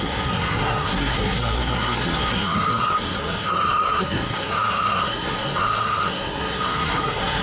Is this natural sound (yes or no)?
no